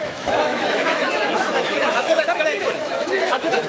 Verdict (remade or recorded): remade